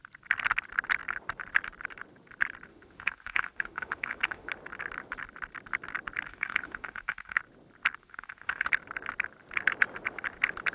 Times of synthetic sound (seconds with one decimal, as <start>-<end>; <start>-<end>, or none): 2.7-4.5; 6.3-7.4; 8.0-8.7